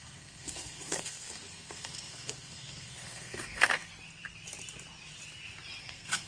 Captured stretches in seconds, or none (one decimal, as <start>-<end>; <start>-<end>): 3.9-5.8